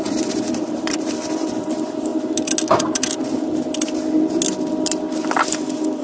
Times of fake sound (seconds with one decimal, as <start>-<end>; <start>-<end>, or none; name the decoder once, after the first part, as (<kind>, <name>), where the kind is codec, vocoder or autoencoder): 0.0-2.1 (vocoder, BigVGAN v2)